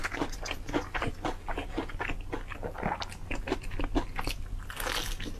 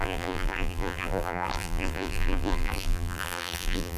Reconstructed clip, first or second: second